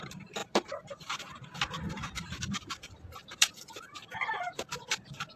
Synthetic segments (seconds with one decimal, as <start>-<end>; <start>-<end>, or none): 0.4-1.0; 2.0-5.4

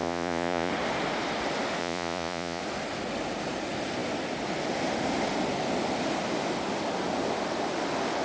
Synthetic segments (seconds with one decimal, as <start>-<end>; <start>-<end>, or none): 0.0-0.7; 1.8-2.6